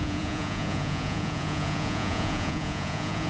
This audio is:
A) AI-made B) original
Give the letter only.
A